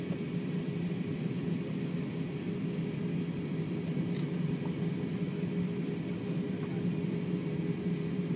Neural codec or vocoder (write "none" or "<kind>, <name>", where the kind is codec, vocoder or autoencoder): none